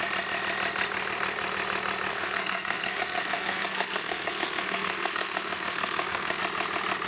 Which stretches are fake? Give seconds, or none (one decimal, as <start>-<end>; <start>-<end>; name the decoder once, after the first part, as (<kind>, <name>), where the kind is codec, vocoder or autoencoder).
2.1-6.4 (codec, SNAC)